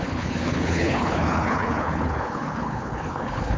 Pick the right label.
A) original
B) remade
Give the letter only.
B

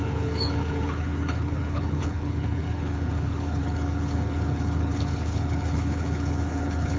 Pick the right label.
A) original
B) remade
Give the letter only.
B